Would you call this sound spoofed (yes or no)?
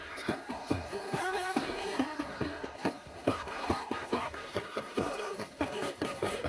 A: yes